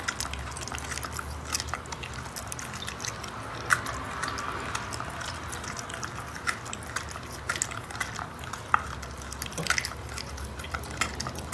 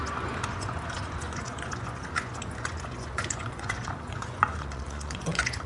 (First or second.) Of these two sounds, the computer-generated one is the second